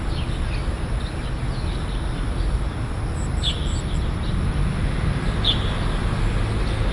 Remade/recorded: recorded